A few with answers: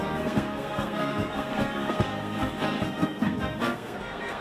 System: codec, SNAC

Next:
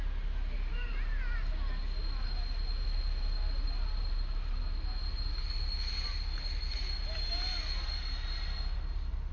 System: none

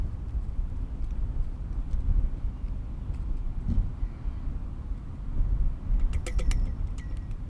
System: none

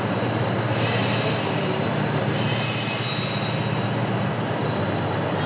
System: none